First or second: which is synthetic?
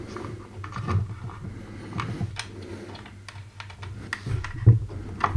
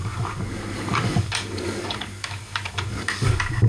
second